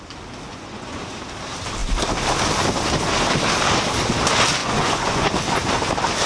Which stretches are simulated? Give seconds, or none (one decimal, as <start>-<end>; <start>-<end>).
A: 0.5-1.0; 4.6-5.3